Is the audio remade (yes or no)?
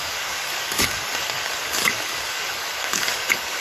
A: yes